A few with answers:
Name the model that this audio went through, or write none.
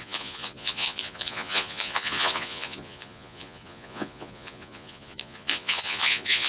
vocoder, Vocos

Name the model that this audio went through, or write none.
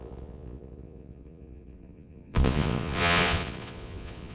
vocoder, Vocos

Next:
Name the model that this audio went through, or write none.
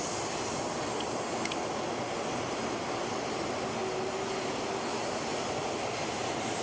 none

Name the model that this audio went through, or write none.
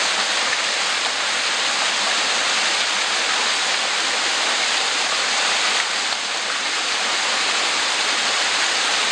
none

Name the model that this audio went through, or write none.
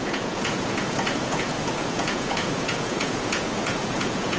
vocoder, Vocos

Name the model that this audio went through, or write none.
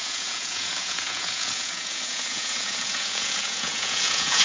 vocoder, Vocos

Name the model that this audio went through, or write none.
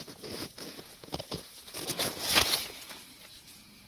vocoder, Vocos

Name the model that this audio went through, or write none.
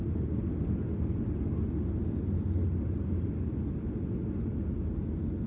none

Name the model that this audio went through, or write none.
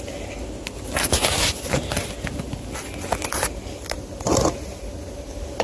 none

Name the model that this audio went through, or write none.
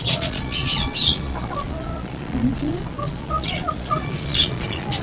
vocoder, Vocos